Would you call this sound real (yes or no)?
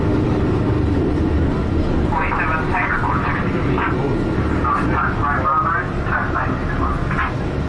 yes